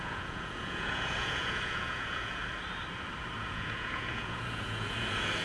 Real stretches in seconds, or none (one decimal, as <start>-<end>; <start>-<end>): 2.4-3.4